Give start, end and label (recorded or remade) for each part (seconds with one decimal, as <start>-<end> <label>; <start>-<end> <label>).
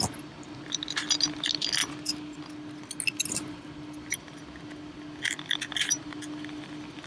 0.0-7.1 recorded